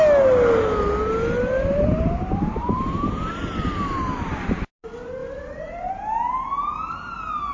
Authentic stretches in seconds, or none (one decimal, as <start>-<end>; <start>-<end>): 0.0-1.7; 3.2-5.2; 5.9-7.5